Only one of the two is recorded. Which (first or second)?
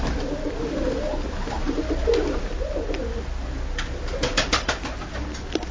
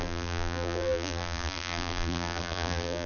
first